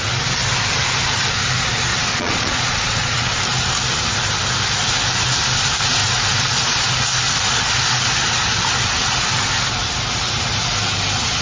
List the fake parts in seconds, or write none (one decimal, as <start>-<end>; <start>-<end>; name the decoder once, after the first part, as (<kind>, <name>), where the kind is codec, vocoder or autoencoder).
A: 1.9-3.3 (vocoder, Vocos)